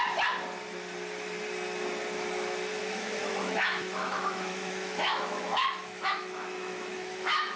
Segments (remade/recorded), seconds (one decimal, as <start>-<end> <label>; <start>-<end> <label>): 0.0-2.8 recorded; 2.8-7.6 remade